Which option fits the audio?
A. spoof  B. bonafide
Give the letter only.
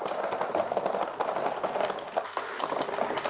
B